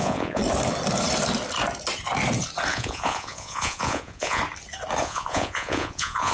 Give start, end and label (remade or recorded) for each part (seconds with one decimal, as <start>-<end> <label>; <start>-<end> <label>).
0.0-0.4 remade; 0.4-2.7 recorded; 2.7-4.4 remade; 4.4-5.0 recorded; 5.0-6.3 remade